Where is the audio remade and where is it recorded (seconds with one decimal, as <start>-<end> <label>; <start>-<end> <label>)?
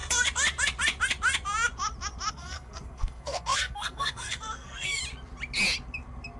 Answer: 0.0-2.3 recorded; 2.3-5.0 remade; 5.0-6.4 recorded